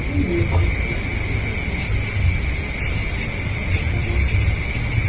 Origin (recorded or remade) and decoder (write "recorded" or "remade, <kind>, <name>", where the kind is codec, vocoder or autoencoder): recorded